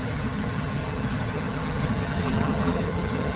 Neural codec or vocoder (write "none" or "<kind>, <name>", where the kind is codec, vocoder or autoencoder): vocoder, HiFi-GAN